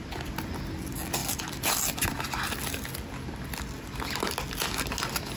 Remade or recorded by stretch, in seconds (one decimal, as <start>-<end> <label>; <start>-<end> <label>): 0.0-5.4 recorded